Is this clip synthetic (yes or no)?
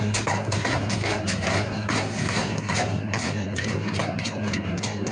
yes